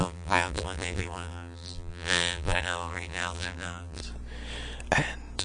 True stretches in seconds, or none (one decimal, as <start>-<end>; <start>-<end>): 4.0-5.4